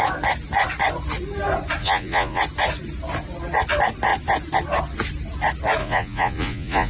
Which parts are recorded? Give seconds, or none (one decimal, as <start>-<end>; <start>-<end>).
0.0-1.8; 2.4-5.8